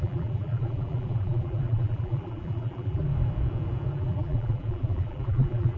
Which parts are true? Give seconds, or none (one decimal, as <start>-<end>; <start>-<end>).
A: 3.1-3.9